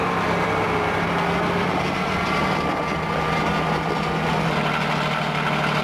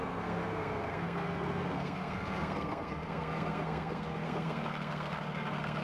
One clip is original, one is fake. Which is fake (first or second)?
second